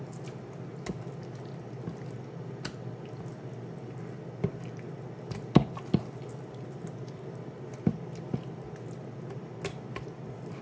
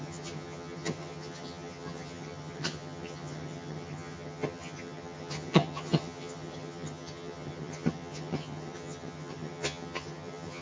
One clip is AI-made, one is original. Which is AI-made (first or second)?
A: second